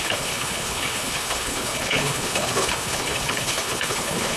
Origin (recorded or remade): remade